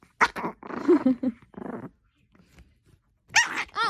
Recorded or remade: recorded